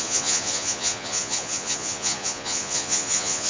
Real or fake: fake